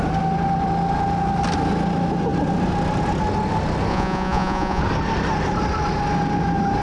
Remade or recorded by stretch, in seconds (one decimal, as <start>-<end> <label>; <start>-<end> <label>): 0.0-3.9 recorded; 3.9-4.8 remade; 4.8-6.8 recorded